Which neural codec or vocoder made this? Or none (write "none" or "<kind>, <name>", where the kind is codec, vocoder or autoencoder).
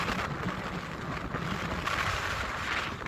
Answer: none